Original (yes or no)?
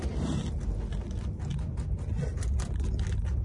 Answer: yes